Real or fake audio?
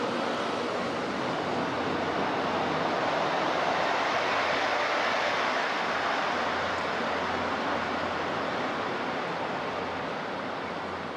real